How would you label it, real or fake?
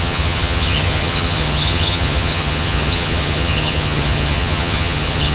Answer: fake